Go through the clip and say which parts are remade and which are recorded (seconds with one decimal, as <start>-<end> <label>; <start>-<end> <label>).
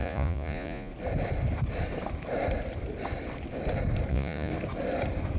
0.0-0.9 remade; 0.9-4.1 recorded; 4.1-4.5 remade; 4.5-5.4 recorded